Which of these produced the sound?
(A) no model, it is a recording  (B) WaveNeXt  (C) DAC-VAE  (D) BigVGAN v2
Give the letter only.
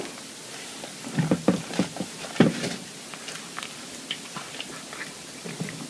A